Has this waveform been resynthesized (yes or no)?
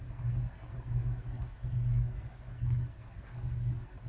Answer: yes